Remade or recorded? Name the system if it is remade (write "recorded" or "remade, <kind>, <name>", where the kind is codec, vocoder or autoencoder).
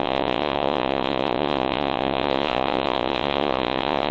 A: remade, vocoder, Vocos